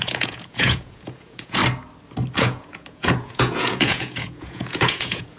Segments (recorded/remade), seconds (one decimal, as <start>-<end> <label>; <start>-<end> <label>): 0.0-1.6 remade; 1.6-2.4 recorded; 2.4-5.4 remade